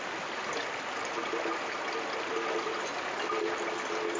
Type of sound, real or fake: real